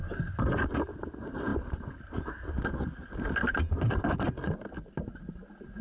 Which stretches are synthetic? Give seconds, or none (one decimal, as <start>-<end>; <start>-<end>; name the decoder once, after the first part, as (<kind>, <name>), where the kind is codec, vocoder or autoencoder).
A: none

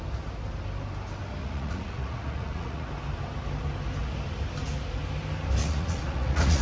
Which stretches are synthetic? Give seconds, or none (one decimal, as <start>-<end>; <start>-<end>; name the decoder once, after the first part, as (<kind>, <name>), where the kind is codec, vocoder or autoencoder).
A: 1.4-2.9 (vocoder, Vocos); 5.6-6.6

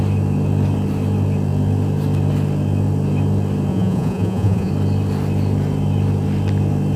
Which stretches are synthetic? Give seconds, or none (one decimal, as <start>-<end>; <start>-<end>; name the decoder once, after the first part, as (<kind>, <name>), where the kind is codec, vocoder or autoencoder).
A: 3.7-4.7 (vocoder, Vocos)

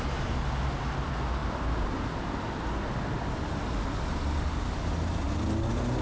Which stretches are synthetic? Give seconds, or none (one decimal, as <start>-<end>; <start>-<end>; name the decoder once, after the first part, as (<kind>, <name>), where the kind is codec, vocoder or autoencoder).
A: none

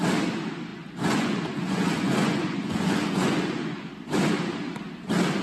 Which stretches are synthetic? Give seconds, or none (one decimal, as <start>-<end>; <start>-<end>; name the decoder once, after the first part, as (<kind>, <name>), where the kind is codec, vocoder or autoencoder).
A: 0.7-3.9 (vocoder, Vocos)

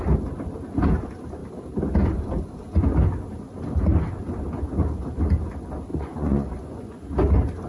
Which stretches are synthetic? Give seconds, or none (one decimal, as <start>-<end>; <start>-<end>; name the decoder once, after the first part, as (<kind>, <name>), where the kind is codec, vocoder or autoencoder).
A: 5.9-7.0 (vocoder, Vocos)